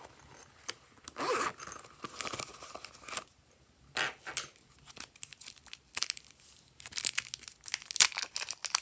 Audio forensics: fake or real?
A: real